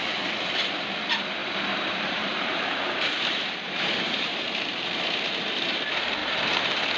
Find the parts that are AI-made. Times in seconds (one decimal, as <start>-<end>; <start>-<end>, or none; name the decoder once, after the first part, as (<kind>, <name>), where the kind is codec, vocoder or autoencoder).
1.4-4.4 (vocoder, BigVGAN v2); 6.2-7.0